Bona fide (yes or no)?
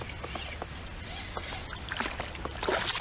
yes